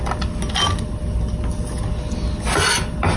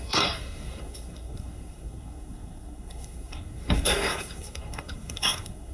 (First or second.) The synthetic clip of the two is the second